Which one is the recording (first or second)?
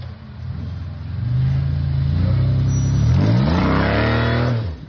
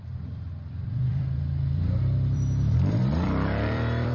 first